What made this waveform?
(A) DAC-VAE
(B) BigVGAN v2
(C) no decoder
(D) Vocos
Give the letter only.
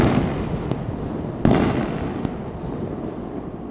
C